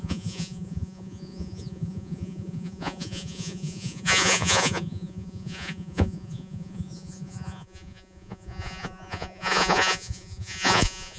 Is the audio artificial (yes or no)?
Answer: yes